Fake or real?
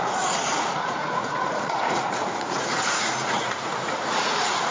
fake